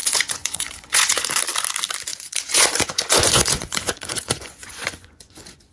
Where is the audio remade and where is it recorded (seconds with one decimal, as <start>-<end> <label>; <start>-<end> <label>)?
0.0-1.3 remade; 1.3-2.1 recorded; 2.1-5.7 remade